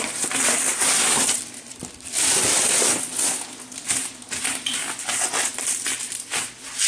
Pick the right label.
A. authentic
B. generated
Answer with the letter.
B